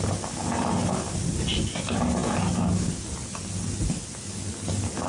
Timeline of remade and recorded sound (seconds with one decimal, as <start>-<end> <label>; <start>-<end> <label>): 0.0-5.1 recorded